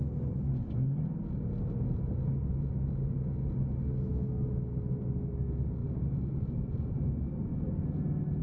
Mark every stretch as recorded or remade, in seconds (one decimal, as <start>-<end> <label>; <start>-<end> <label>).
0.0-8.4 recorded